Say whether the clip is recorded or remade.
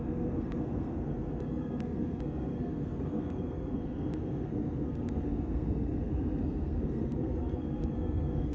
remade